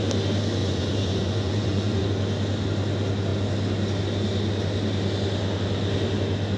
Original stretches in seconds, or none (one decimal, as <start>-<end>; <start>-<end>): 0.0-0.6; 2.0-6.6